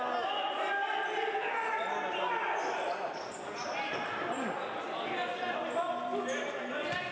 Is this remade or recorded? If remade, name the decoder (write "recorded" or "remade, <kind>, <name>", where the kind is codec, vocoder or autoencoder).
recorded